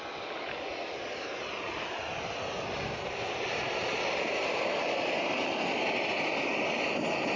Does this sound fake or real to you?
real